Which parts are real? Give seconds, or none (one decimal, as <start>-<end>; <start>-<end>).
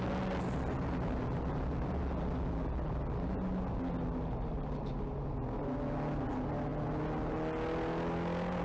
0.0-8.6